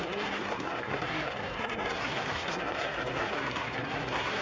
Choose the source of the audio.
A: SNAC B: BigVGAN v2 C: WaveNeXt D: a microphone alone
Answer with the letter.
A